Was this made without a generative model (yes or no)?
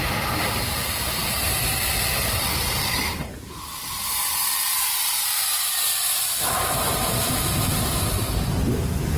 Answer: no